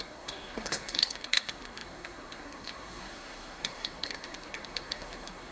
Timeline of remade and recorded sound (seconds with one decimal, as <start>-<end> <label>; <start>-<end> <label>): 0.0-5.5 remade